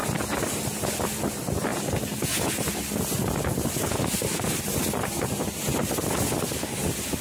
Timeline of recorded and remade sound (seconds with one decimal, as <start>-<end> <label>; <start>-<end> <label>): 0.0-1.2 recorded; 1.2-1.7 remade; 1.7-4.6 recorded; 4.6-5.7 remade; 5.7-6.7 recorded; 6.7-7.2 remade